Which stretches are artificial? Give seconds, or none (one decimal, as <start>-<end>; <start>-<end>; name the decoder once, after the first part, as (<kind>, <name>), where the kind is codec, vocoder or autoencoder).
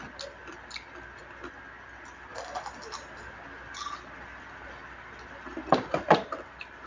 none